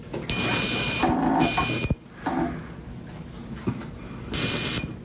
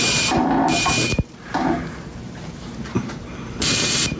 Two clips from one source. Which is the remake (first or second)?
second